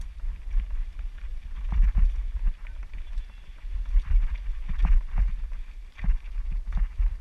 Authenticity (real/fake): real